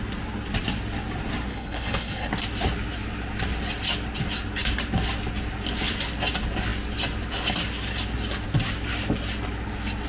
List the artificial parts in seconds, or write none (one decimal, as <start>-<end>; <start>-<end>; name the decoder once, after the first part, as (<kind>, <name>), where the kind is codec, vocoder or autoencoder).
1.5-2.3 (codec, HILCodec)